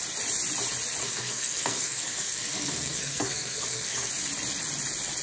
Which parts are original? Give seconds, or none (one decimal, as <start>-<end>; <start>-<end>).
0.0-1.0; 4.1-5.2